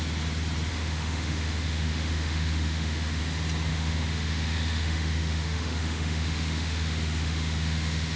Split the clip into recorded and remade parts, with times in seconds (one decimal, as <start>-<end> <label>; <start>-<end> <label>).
0.0-0.7 recorded; 0.7-3.2 remade; 3.2-3.7 recorded; 3.7-8.2 remade